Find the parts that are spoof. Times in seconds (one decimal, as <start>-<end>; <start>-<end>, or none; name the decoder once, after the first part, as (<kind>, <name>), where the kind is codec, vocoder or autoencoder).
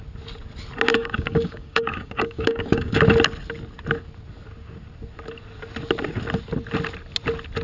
0.9-3.0 (codec, DAC)